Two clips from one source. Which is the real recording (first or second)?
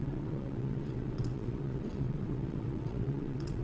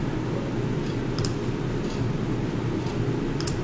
second